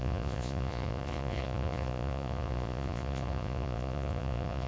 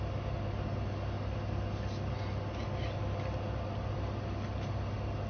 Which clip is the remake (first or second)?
first